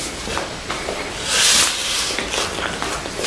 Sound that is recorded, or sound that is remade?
recorded